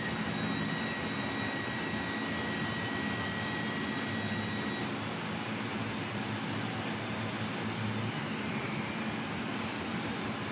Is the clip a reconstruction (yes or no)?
no